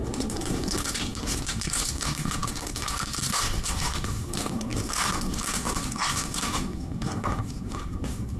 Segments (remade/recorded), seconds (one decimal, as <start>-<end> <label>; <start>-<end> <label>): 0.0-8.4 remade

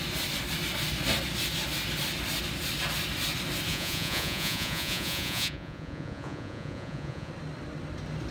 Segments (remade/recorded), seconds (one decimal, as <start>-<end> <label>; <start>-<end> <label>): 0.0-3.7 recorded; 3.7-7.3 remade; 7.3-8.3 recorded

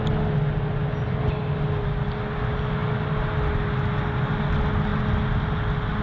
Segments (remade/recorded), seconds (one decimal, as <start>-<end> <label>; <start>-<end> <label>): 0.0-6.0 recorded

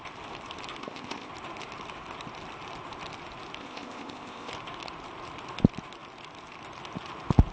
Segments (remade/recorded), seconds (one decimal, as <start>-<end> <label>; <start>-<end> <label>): 0.0-0.8 recorded; 0.8-1.3 remade; 1.3-3.6 recorded; 3.6-4.5 remade; 4.5-7.5 recorded

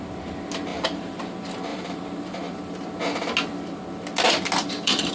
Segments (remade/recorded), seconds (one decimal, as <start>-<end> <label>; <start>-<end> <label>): 0.0-0.7 recorded; 0.7-1.2 remade; 1.2-1.7 recorded; 1.7-3.0 remade; 3.0-4.6 recorded; 4.6-5.1 remade